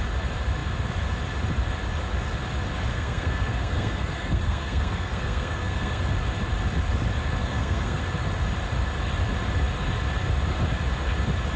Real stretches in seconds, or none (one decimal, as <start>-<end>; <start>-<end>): 0.0-2.9; 6.0-7.4; 8.0-11.6